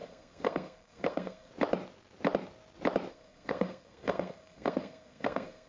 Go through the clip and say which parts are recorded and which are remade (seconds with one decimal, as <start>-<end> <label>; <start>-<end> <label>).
0.0-1.5 remade; 1.5-3.1 recorded; 3.1-5.7 remade